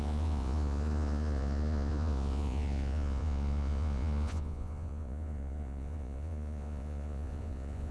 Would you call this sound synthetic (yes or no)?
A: yes